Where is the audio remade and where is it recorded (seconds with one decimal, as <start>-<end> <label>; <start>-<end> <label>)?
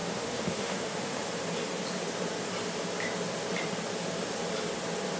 0.0-1.2 remade; 1.2-5.2 recorded